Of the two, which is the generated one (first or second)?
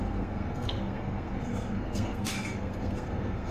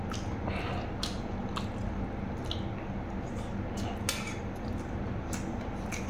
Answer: first